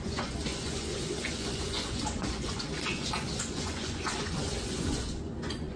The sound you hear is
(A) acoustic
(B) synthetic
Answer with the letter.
B